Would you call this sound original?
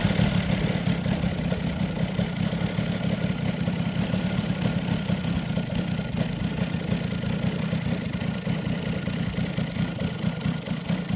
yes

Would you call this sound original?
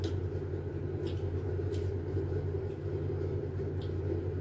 yes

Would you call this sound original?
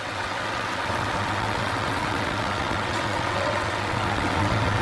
no